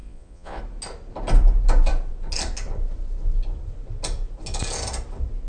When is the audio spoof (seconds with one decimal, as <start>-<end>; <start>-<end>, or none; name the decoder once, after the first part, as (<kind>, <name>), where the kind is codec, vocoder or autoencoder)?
0.0-0.6 (vocoder, Vocos)